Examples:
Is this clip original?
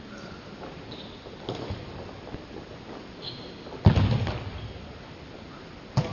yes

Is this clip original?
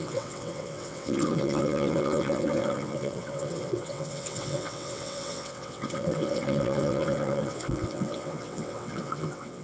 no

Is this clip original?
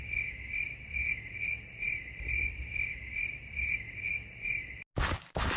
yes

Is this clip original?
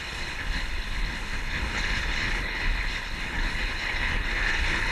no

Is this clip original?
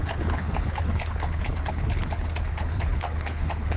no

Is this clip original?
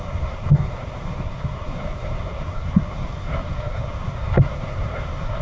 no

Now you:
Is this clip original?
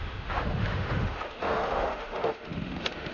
no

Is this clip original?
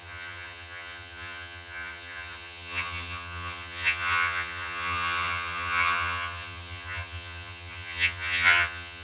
no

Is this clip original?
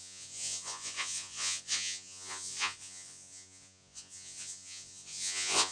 no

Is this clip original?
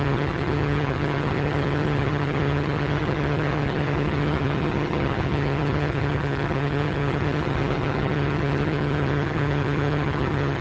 no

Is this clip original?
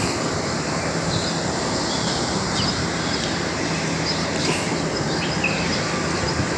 no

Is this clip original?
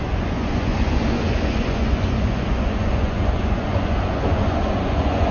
no